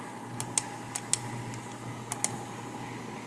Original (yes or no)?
yes